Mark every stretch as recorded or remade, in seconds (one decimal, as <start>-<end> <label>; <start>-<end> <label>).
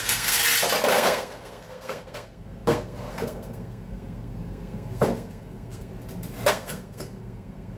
0.0-0.4 remade; 0.4-0.9 recorded; 0.9-5.9 remade; 5.9-6.5 recorded; 6.5-7.8 remade